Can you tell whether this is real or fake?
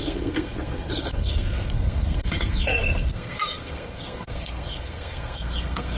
fake